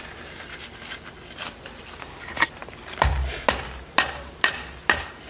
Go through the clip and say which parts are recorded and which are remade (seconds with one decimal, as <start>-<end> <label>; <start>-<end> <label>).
0.0-5.3 recorded